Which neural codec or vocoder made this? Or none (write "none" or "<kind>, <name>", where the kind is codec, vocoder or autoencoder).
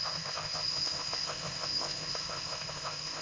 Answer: codec, ZipCodec